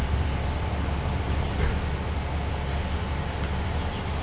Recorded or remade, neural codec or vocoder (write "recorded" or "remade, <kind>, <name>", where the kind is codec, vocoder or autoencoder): recorded